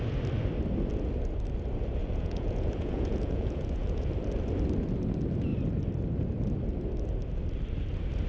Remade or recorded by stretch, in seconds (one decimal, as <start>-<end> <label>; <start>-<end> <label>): 0.0-2.0 recorded; 2.0-4.1 remade; 4.1-8.3 recorded